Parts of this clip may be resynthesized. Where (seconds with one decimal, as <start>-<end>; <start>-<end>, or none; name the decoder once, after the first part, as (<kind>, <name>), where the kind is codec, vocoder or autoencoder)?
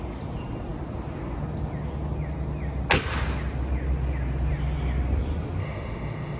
5.6-6.4 (autoencoder, DAC-VAE)